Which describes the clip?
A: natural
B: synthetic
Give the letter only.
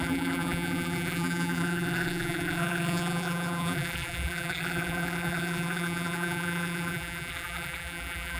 B